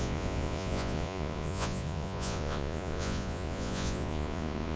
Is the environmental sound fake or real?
fake